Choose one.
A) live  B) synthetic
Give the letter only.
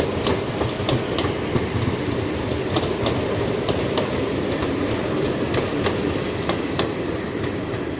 A